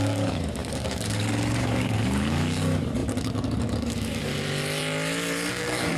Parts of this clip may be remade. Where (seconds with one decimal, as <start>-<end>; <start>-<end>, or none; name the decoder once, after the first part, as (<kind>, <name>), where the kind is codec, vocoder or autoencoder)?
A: 0.0-4.3 (codec, DAC); 5.5-6.0